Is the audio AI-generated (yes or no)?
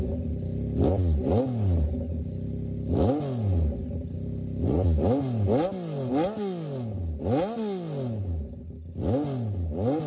no